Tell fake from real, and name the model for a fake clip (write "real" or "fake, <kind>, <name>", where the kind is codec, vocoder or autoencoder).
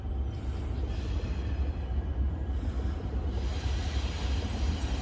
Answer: real